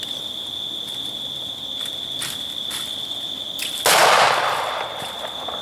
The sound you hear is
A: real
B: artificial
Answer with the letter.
A